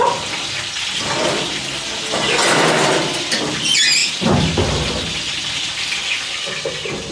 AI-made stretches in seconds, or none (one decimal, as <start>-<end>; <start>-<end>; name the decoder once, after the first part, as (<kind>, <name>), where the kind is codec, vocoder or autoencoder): none